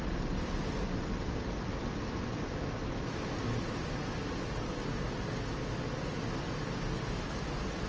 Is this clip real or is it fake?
real